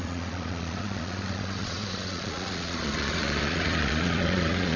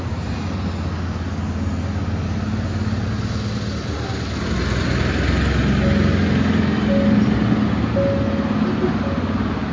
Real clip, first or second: second